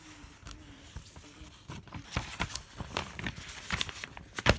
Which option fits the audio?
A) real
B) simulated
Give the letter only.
A